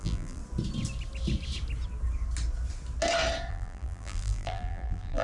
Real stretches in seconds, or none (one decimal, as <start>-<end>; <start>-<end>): 0.4-3.5